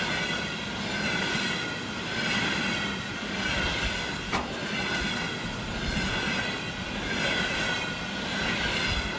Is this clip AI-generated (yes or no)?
no